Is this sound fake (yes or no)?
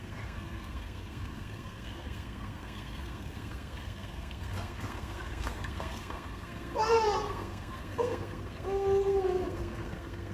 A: yes